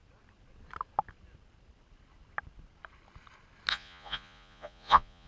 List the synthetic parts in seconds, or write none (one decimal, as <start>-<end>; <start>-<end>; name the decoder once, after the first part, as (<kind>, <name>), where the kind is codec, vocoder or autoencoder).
3.7-5.3 (vocoder, Vocos)